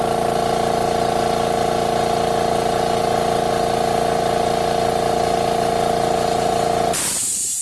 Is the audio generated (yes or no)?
no